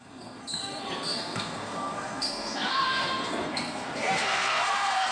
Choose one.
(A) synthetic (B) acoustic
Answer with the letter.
A